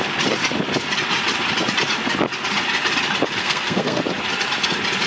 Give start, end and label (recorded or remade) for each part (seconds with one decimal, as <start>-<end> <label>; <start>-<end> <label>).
0.0-3.4 recorded; 3.4-4.0 remade; 4.0-5.1 recorded

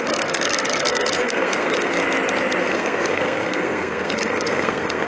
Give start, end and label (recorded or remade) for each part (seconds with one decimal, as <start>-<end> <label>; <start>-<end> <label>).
0.0-1.9 remade; 1.9-2.6 recorded; 2.6-5.1 remade

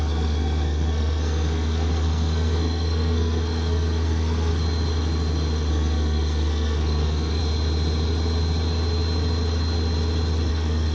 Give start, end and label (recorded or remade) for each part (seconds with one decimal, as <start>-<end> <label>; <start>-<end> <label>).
0.0-4.5 remade; 4.5-5.7 recorded; 5.7-7.4 remade; 7.4-10.5 recorded; 10.5-10.9 remade